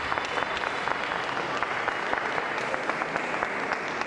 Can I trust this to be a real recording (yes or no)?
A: yes